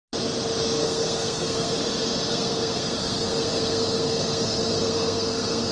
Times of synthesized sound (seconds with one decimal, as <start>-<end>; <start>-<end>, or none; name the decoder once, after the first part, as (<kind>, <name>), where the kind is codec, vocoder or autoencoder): 0.8-1.7 (codec, SNAC); 2.3-5.7